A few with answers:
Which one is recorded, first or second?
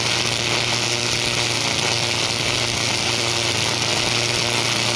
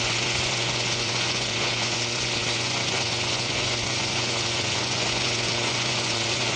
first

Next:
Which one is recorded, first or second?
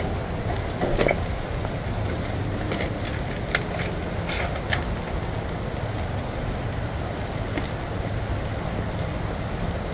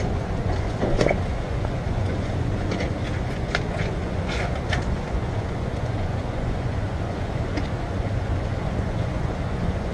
first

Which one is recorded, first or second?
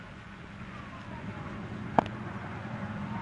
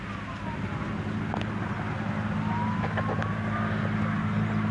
second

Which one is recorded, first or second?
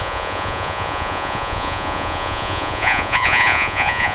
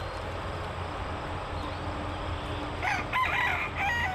second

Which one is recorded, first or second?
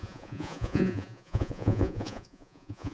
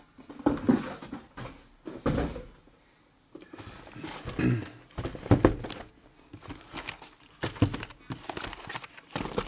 second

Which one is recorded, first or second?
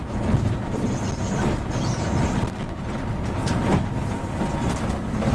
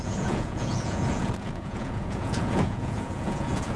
first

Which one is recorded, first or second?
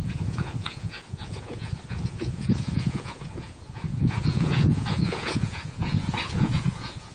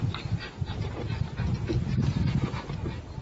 second